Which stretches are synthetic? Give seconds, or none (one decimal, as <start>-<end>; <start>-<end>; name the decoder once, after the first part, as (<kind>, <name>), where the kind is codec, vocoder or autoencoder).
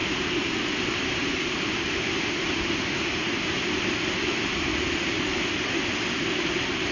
0.0-4.7 (vocoder, BigVGAN v2)